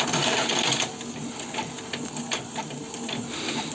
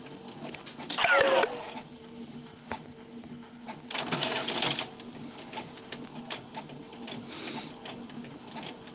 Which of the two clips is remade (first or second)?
first